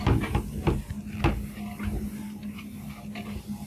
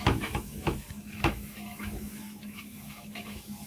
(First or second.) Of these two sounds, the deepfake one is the second